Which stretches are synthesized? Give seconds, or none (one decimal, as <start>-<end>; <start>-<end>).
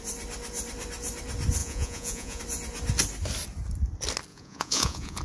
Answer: 1.6-2.4; 4.3-5.2